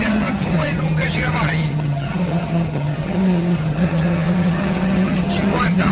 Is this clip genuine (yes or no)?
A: no